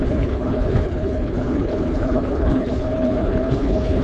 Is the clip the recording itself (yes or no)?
no